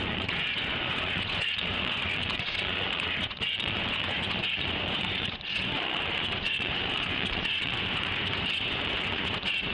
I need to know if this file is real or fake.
fake